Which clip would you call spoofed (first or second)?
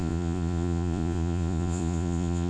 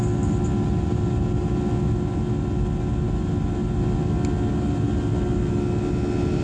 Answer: first